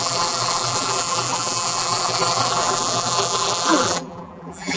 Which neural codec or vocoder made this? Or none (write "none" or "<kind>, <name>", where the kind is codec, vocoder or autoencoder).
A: vocoder, BigVGAN v2